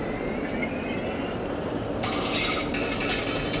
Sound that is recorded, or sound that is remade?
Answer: recorded